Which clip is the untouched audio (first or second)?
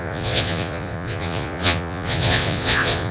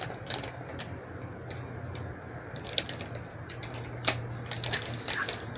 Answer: second